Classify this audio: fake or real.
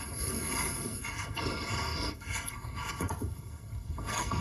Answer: fake